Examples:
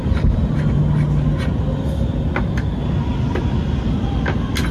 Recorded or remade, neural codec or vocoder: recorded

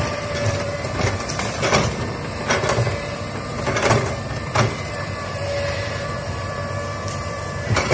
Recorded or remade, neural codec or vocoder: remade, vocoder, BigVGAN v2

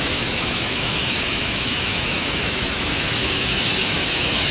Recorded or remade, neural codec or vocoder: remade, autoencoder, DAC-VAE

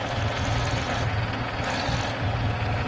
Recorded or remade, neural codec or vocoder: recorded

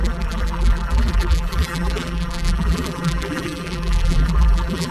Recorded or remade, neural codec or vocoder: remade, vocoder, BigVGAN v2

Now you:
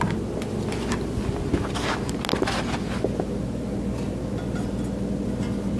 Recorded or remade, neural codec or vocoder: recorded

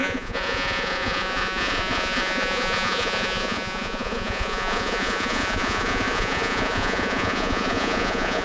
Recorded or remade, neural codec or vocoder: remade, vocoder, Vocos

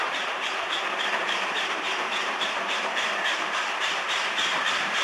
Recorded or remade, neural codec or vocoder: remade, vocoder, BigVGAN v2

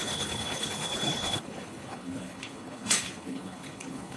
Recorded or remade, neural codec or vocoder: remade, codec, HILCodec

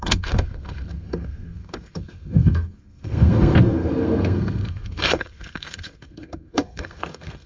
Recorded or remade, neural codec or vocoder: remade, codec, SNAC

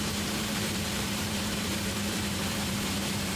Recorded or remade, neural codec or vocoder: remade, vocoder, BigVGAN v2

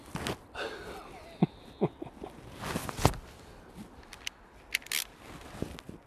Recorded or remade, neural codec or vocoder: recorded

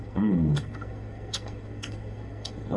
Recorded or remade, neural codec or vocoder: remade, codec, SNAC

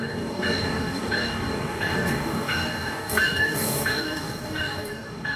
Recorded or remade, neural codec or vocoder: remade, codec, DAC